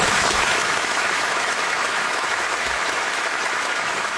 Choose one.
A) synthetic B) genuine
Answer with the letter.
A